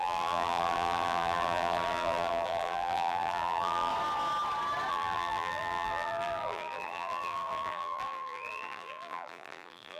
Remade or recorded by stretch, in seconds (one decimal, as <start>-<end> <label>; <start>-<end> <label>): 0.0-3.9 remade; 3.9-4.9 recorded; 4.9-10.0 remade